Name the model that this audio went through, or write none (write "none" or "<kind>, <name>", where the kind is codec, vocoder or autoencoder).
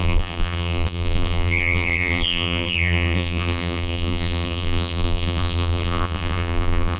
vocoder, BigVGAN v2